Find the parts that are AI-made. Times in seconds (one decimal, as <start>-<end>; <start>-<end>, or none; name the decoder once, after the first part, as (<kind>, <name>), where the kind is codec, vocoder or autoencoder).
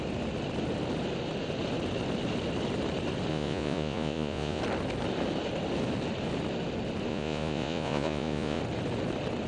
3.3-4.6 (vocoder, Vocos); 7.1-8.6